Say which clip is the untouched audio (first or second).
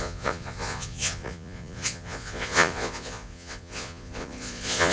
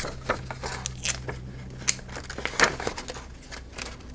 second